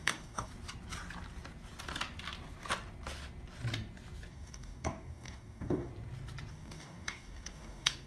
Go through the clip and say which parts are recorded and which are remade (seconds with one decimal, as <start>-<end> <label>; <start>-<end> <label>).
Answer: 0.0-0.5 remade; 0.5-4.3 recorded; 4.3-5.9 remade; 5.9-6.5 recorded; 6.5-8.1 remade